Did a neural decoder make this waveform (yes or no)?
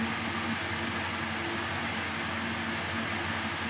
no